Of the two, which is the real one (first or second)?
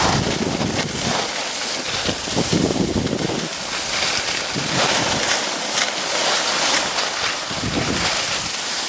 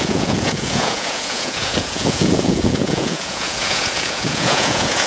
first